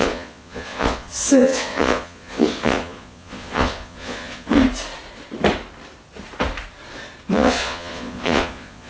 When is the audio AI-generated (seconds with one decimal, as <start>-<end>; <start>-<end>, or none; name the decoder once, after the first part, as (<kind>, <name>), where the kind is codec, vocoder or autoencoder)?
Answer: 0.0-4.6 (vocoder, Vocos); 7.3-8.9